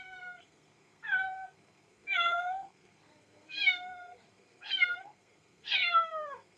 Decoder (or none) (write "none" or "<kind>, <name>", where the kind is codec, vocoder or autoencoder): codec, SNAC